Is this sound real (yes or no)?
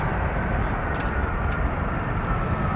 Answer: yes